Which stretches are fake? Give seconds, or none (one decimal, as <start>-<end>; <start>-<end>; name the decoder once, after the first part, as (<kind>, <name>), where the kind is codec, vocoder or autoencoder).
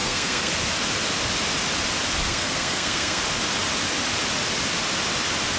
0.0-0.5 (codec, SNAC); 2.3-3.2